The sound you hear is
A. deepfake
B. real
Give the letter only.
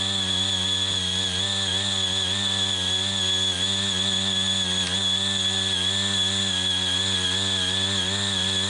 B